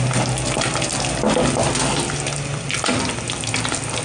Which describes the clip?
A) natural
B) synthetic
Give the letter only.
A